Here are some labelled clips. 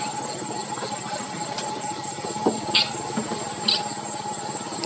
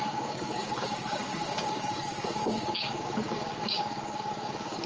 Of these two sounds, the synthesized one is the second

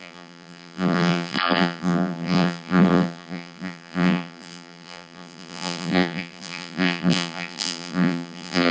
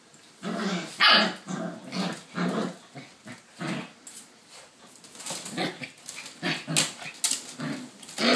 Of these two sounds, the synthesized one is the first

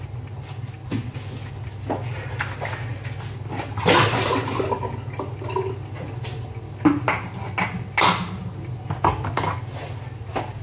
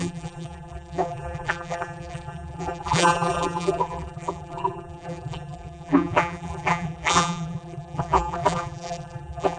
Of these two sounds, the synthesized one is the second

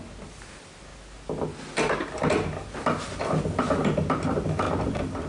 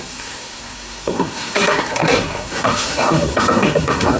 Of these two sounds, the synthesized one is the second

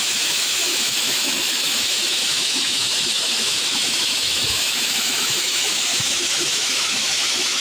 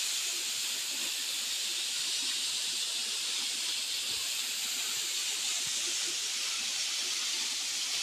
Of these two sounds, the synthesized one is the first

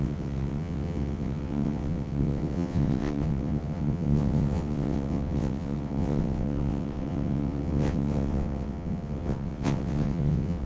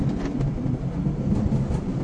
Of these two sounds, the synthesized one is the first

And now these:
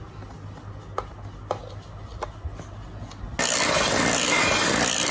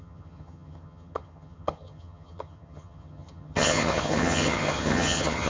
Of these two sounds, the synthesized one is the second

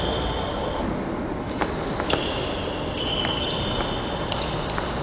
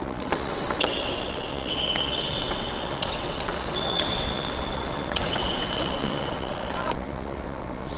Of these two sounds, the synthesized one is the second